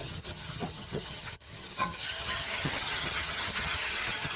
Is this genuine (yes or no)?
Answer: no